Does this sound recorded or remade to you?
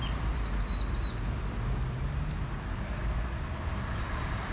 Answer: recorded